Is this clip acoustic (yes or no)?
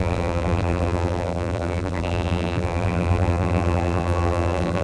no